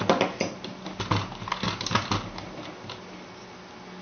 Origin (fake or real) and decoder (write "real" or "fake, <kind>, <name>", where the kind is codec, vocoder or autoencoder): real